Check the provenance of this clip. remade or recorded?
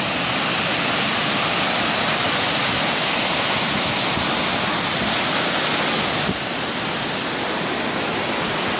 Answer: recorded